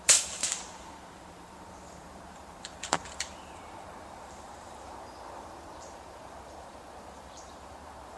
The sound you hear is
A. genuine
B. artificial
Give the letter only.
B